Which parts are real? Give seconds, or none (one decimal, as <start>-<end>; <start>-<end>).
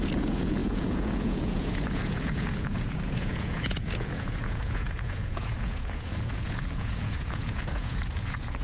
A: none